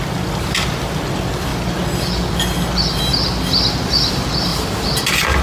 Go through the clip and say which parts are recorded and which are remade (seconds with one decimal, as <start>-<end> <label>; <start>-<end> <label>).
0.0-4.5 recorded; 4.5-5.4 remade